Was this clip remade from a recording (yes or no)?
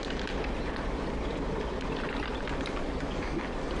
no